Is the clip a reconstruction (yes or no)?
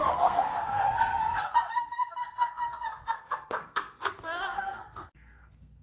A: yes